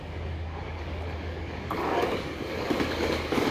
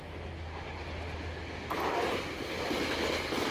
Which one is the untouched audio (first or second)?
second